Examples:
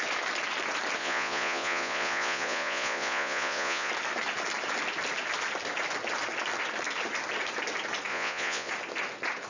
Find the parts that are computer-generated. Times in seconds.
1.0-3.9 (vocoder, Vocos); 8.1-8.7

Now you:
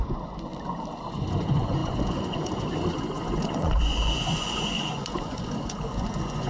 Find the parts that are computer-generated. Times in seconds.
0.0-0.5 (vocoder, Vocos); 1.1-6.5